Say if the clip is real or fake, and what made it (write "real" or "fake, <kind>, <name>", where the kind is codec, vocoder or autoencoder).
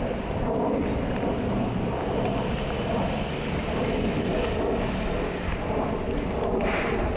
real